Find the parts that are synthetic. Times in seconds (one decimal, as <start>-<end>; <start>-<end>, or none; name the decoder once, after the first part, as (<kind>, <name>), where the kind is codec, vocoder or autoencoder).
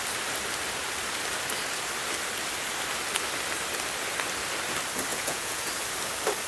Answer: 5.1-5.7 (vocoder, Vocos)